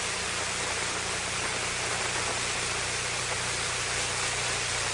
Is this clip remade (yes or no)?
no